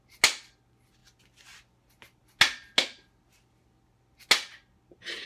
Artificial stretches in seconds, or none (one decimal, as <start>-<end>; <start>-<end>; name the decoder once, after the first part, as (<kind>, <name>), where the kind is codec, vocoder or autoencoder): none